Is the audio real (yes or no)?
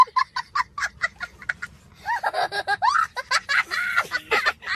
yes